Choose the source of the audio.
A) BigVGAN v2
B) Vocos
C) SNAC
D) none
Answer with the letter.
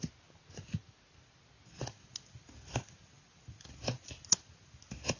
D